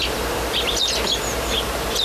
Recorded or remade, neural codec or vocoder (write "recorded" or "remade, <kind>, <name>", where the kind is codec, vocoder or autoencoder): remade, vocoder, BigVGAN v2